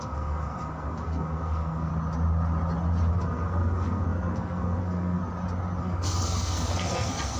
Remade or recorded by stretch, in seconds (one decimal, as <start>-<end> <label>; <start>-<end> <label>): 0.0-1.9 remade; 1.9-3.1 recorded; 3.1-5.2 remade; 5.2-5.8 recorded; 5.8-7.4 remade